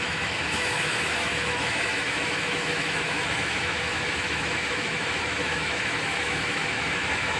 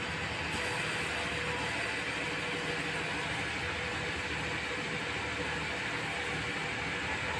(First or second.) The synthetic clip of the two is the first